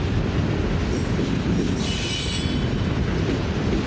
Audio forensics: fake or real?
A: real